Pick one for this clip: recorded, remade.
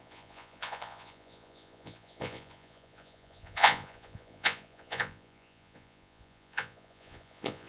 remade